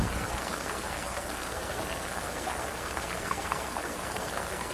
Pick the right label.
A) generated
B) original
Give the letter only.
A